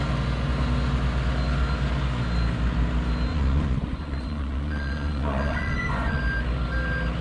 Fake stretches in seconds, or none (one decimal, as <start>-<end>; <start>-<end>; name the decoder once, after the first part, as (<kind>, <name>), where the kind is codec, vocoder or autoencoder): 3.3-6.2 (vocoder, Vocos)